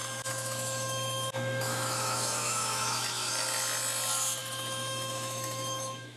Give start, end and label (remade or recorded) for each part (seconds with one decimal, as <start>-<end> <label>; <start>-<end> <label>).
0.0-3.3 remade; 3.3-4.4 recorded; 4.4-6.2 remade